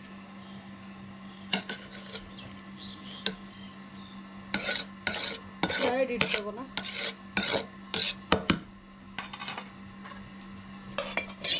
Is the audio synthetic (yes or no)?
no